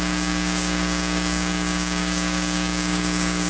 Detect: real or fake fake